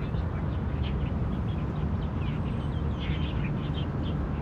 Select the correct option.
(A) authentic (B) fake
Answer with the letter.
A